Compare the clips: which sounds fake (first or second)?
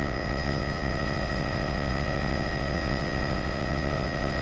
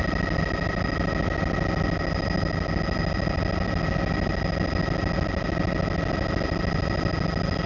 first